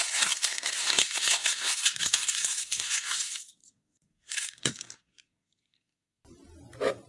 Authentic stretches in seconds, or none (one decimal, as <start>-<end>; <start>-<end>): 6.2-7.1